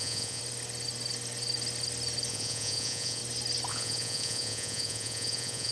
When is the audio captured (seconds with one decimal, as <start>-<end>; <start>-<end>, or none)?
0.4-2.3; 3.2-3.7

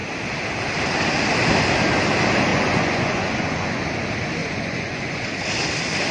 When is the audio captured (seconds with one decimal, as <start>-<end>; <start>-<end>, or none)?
0.0-2.5; 3.8-4.4; 5.3-6.1

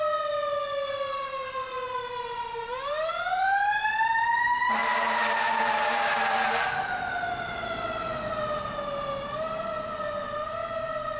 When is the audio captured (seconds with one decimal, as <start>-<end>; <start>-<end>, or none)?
0.0-11.2

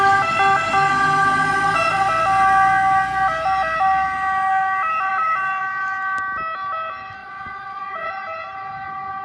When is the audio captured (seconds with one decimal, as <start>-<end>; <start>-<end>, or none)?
0.0-7.2; 8.1-9.2

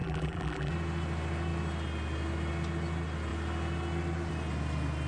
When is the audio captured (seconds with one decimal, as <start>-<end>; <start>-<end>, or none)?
0.7-5.1

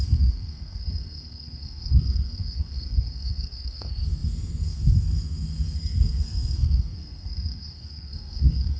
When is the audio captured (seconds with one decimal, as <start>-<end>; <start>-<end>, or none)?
none

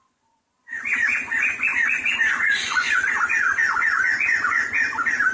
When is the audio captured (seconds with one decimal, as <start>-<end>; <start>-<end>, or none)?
none